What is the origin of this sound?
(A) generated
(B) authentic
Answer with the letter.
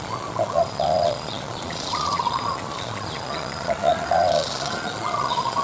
A